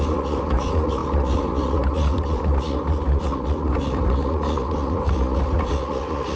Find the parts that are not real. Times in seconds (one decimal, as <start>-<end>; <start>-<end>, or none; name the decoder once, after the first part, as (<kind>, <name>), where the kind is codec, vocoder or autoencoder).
0.0-6.4 (vocoder, Vocos)